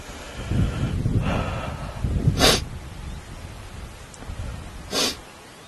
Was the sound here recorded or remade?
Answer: recorded